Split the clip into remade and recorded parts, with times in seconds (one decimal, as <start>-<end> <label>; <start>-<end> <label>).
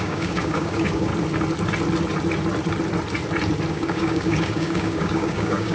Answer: 0.0-1.1 remade; 1.1-3.7 recorded; 3.7-5.7 remade